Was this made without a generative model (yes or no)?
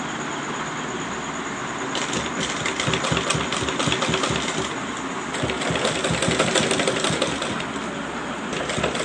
yes